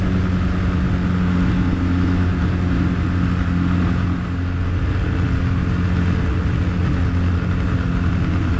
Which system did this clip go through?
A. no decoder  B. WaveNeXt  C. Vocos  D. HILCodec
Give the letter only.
A